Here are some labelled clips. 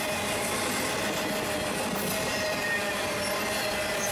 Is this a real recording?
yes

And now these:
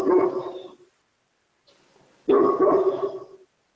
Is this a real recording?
yes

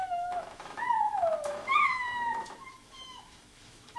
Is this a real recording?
no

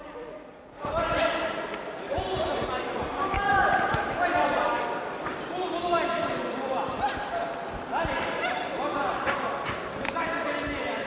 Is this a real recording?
no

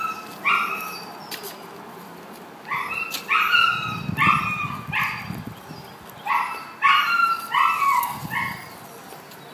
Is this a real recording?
yes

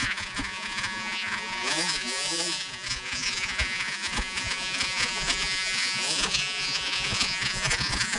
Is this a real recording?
no